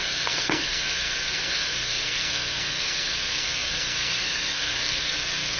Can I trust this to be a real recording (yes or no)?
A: no